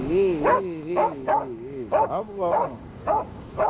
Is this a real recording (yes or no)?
no